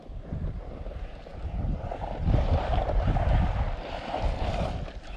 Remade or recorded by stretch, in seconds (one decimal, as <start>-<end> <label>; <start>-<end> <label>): 0.0-5.2 recorded